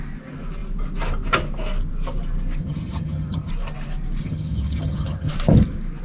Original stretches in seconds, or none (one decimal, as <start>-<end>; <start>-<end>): 0.0-2.6; 3.5-4.2; 5.3-6.0